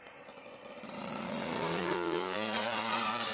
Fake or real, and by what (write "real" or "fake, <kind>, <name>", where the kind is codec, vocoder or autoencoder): fake, vocoder, Vocos